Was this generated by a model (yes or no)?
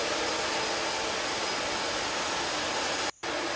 no